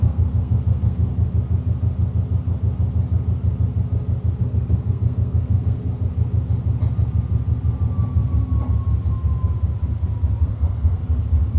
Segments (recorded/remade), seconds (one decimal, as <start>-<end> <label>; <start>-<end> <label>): 0.0-1.1 remade; 1.1-4.4 recorded; 4.4-5.8 remade; 5.8-10.4 recorded; 10.4-11.0 remade; 11.0-11.6 recorded